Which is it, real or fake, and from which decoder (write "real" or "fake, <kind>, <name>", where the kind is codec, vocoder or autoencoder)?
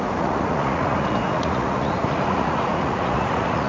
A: fake, vocoder, Vocos